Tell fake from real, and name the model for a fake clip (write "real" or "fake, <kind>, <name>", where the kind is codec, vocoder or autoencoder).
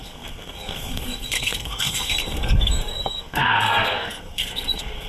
fake, codec, SNAC